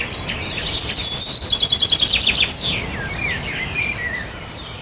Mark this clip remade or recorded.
recorded